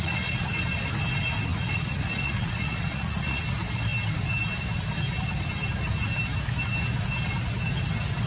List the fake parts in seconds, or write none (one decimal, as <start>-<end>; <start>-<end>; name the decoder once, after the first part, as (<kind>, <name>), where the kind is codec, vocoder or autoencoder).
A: 0.0-0.5 (vocoder, Vocos); 1.5-3.4